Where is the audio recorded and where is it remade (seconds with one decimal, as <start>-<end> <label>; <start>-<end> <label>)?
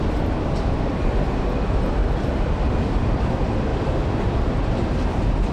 0.0-3.7 remade; 3.7-4.3 recorded; 4.3-5.5 remade